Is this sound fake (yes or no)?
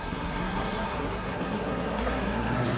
yes